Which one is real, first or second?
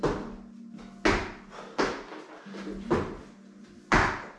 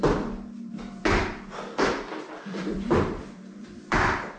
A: first